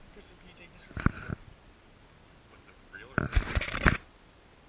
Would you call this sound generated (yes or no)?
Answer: no